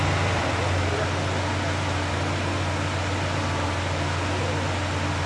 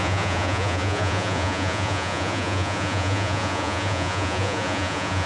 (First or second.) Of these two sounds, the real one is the first